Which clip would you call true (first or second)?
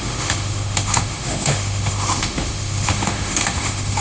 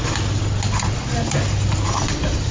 second